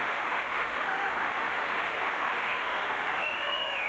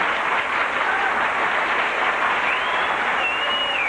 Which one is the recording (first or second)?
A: second